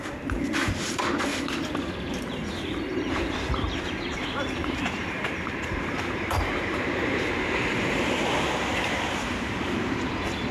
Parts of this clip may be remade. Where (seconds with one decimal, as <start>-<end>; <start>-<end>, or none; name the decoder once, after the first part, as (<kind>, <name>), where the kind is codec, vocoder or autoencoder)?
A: 0.0-1.3 (vocoder, BigVGAN v2); 2.1-10.5